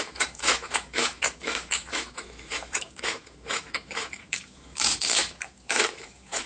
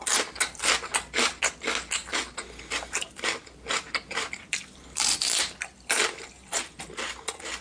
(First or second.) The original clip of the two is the second